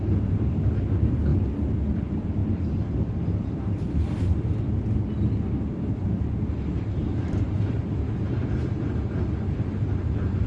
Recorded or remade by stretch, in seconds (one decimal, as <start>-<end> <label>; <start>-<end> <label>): 0.0-10.5 recorded